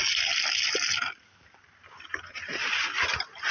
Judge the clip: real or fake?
real